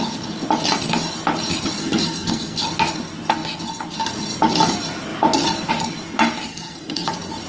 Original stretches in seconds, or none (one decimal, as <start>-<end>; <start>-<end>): 0.0-1.8; 2.6-6.5; 7.1-7.5